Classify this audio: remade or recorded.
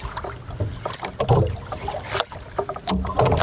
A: recorded